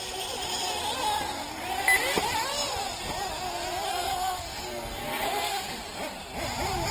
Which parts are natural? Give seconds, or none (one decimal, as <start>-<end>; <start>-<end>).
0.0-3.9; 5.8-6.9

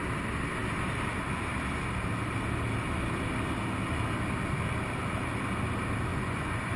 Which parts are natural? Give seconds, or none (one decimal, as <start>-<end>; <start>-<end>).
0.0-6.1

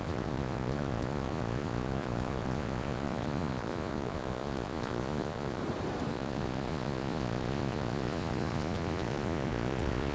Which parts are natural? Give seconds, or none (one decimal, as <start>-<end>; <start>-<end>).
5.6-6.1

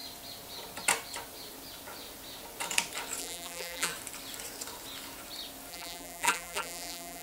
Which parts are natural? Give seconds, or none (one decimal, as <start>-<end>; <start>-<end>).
0.0-3.2; 3.9-5.7